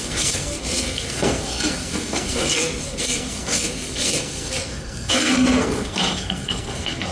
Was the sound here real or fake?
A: fake